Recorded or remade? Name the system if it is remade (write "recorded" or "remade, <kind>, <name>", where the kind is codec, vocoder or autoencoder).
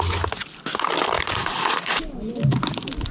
recorded